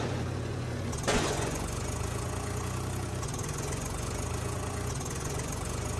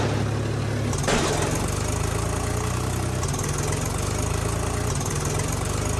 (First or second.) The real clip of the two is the second